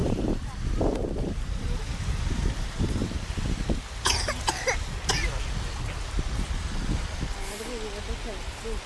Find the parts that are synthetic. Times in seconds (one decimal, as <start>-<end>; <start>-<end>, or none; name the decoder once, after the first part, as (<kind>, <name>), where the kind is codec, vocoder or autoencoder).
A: 0.0-3.3 (vocoder, BigVGAN v2)